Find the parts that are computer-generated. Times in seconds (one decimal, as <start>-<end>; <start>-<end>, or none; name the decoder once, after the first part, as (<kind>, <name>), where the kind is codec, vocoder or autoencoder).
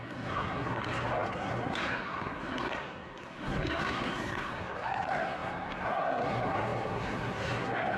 0.0-8.0 (codec, SNAC)